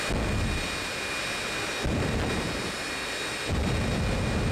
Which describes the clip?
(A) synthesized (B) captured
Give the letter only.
B